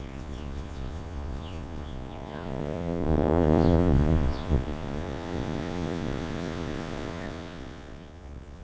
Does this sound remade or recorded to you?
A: remade